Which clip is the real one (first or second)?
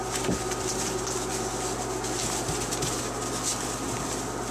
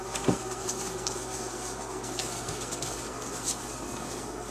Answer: first